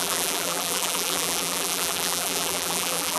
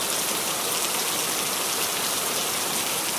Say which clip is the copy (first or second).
first